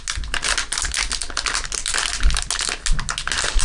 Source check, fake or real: real